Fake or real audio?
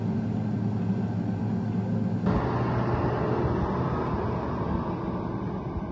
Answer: real